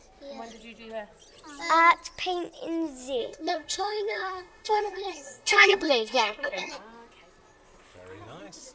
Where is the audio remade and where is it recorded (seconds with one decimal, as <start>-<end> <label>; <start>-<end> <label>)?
0.0-3.2 recorded; 3.2-6.7 remade; 6.7-8.7 recorded